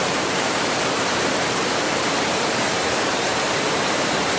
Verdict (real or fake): fake